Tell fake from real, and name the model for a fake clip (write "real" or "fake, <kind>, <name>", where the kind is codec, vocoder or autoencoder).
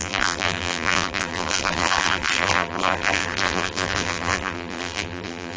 fake, vocoder, BigVGAN v2